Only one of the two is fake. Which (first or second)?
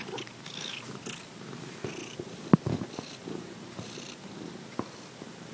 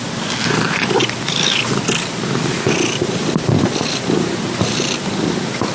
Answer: second